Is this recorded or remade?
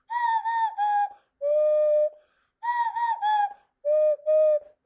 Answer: recorded